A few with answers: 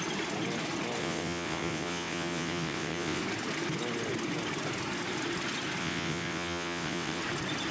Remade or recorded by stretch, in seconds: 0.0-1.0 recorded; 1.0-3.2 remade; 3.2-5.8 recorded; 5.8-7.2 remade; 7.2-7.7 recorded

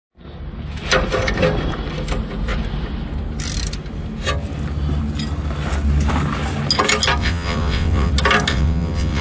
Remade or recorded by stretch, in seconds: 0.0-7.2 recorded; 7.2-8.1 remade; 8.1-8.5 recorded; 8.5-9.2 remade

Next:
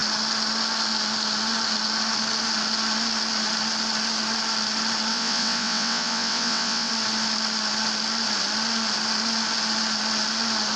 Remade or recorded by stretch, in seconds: 0.0-5.1 recorded; 5.1-6.9 remade; 6.9-10.8 recorded

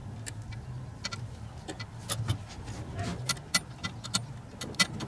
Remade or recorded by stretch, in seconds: 0.0-5.1 recorded